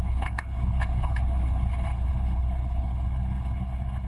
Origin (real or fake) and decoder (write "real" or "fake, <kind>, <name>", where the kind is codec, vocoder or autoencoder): fake, codec, HILCodec